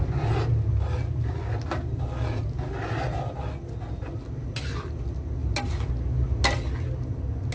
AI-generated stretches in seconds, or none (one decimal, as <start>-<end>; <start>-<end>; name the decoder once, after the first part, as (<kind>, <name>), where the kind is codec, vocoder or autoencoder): none